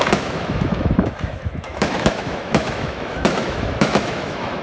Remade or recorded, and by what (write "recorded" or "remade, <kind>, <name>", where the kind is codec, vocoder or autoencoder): remade, autoencoder, DAC-VAE